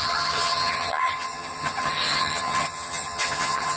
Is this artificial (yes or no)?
yes